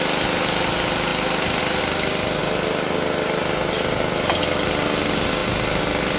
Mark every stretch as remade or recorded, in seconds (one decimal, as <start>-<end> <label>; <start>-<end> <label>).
0.0-6.2 recorded